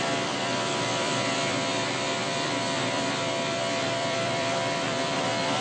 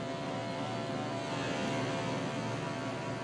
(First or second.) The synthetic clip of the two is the first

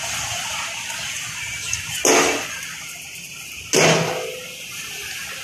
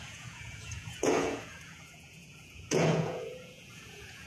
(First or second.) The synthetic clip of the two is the second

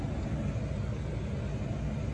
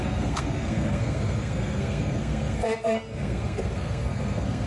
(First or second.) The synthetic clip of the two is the second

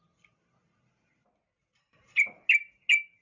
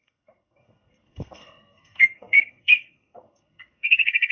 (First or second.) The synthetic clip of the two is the second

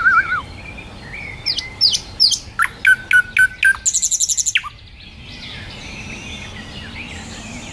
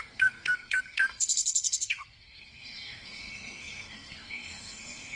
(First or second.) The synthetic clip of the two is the second